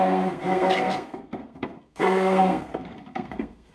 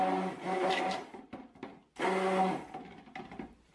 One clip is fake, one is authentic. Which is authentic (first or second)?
second